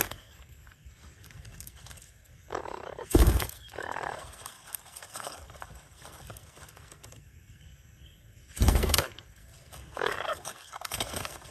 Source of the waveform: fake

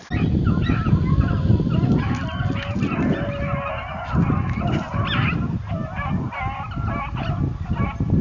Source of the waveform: real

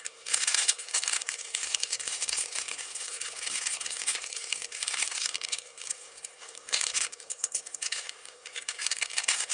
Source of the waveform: fake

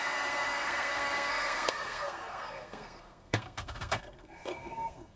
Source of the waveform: fake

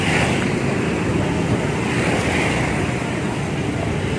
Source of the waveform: real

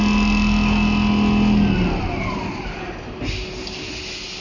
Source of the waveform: real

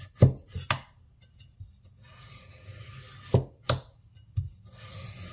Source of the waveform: real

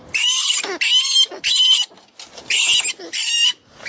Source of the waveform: real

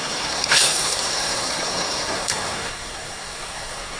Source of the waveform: fake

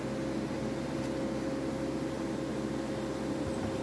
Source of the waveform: real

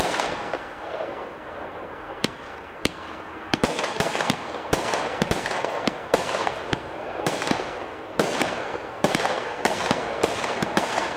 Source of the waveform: fake